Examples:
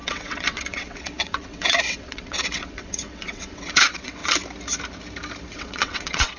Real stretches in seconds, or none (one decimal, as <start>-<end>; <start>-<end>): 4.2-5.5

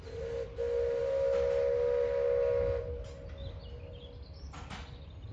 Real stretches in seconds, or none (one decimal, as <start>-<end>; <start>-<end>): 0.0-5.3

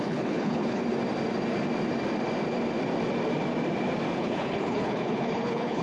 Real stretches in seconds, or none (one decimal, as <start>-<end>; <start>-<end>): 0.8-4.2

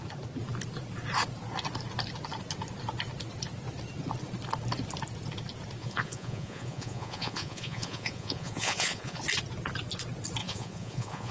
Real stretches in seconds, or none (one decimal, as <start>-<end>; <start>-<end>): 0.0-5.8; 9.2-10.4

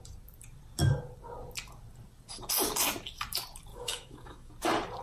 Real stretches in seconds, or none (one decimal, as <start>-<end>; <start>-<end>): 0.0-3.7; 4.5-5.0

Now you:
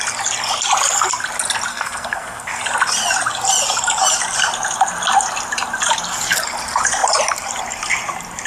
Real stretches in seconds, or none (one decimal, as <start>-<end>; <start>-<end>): 0.0-1.7; 2.6-8.5